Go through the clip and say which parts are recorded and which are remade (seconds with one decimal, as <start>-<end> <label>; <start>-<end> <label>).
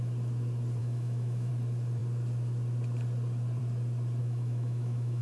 0.0-0.8 recorded; 0.8-1.5 remade; 1.5-4.2 recorded; 4.2-5.2 remade